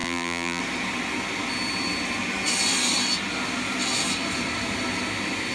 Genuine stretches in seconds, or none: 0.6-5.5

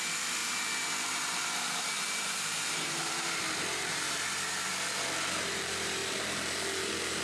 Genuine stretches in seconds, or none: 0.0-0.4; 4.7-6.0

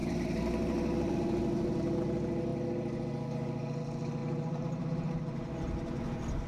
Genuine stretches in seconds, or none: 0.0-4.2; 5.1-6.5

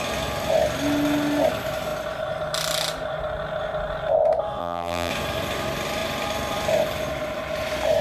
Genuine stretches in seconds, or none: 0.0-4.6; 5.1-8.0

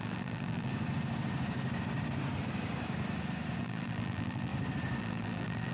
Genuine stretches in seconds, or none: 0.7-3.6; 4.5-5.0

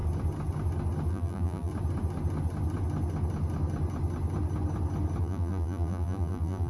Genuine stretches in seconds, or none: 0.0-1.1; 1.7-5.2

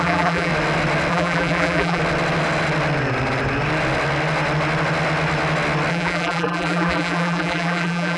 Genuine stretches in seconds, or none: 0.5-1.1; 2.0-5.9

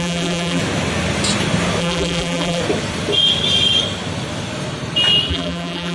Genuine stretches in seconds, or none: 0.6-1.8; 2.6-5.3